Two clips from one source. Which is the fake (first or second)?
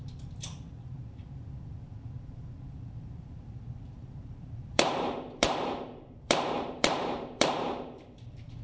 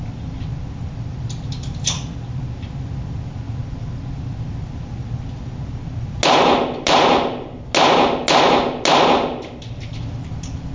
first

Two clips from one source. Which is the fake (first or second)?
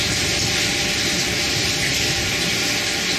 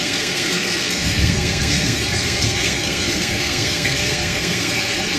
second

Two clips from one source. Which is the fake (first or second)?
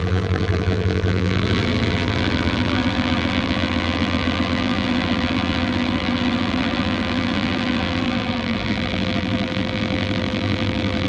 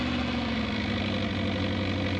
first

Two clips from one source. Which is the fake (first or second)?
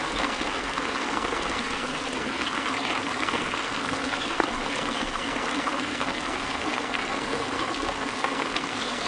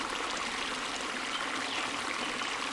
first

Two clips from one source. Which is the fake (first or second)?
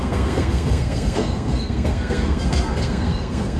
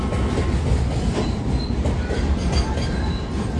first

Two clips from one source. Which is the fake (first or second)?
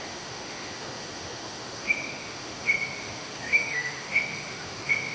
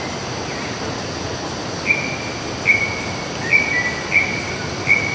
first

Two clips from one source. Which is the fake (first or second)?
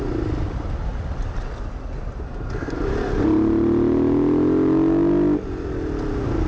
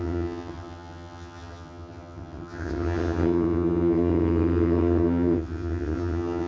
second